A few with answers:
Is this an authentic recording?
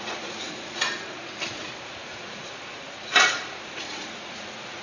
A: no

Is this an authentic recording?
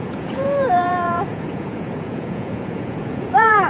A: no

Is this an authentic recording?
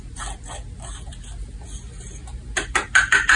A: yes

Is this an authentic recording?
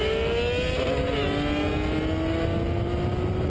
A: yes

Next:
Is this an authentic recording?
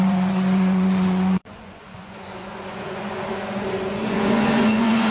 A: no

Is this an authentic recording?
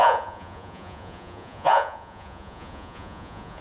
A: no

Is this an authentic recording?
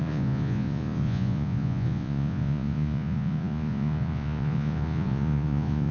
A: no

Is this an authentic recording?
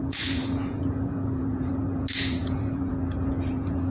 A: no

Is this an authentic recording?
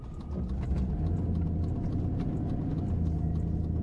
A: yes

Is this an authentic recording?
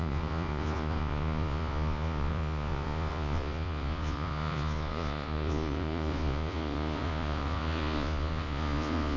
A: no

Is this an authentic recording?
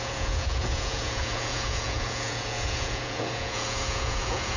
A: no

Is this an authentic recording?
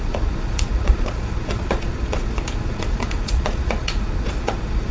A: no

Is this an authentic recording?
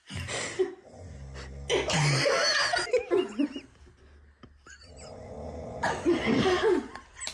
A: yes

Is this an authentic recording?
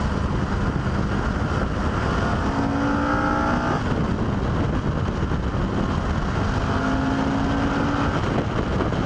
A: yes